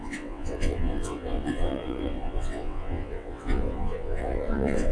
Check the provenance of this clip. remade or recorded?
remade